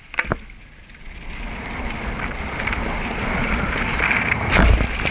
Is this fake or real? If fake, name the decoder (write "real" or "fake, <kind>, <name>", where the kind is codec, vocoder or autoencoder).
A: real